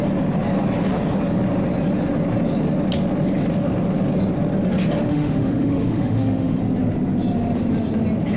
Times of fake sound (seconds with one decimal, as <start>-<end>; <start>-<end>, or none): 5.1-6.6